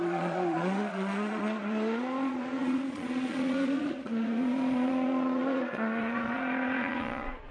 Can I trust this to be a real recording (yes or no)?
no